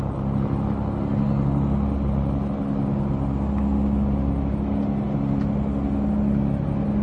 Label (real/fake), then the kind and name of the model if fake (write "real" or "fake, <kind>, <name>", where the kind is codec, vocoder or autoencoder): real